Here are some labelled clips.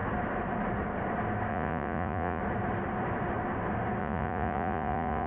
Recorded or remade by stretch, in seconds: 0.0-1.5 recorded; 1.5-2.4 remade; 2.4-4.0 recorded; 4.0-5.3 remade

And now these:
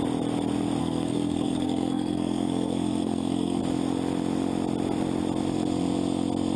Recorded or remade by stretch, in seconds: 0.0-0.8 recorded; 0.8-3.6 remade; 3.6-6.6 recorded

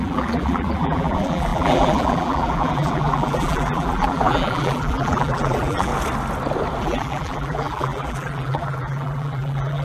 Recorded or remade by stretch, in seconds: 0.0-5.9 remade; 5.9-6.8 recorded; 6.8-9.8 remade

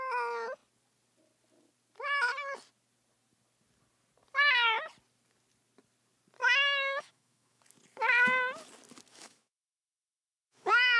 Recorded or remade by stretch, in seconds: 0.0-6.4 recorded; 6.4-7.6 remade; 7.6-9.1 recorded; 9.1-11.0 remade

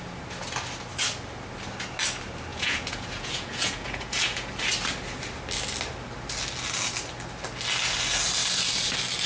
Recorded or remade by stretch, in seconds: 0.0-2.5 recorded; 2.5-4.5 remade; 4.5-9.3 recorded

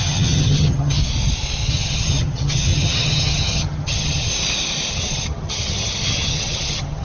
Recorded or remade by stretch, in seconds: 0.0-1.0 remade; 1.0-1.7 recorded; 1.7-4.3 remade; 4.3-4.9 recorded; 4.9-7.0 remade

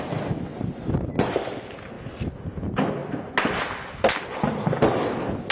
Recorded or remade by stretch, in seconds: 0.0-0.5 recorded; 0.5-1.1 remade; 1.1-5.5 recorded